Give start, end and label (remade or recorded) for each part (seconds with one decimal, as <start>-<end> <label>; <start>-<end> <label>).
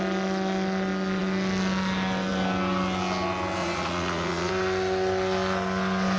0.0-3.6 recorded; 3.6-4.5 remade; 4.5-6.2 recorded